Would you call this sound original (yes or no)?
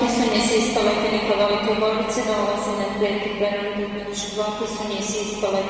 yes